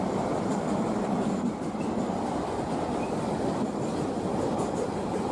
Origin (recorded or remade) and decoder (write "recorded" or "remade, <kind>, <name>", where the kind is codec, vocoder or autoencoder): recorded